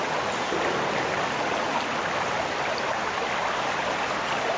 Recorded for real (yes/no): yes